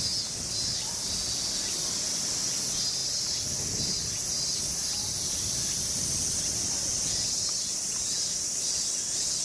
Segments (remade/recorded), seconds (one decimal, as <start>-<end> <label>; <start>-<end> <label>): 0.0-9.4 recorded